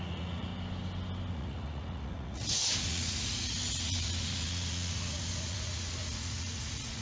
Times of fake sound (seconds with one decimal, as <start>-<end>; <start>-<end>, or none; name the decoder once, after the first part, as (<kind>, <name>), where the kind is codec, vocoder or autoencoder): 0.0-0.5 (vocoder, Vocos); 1.3-7.0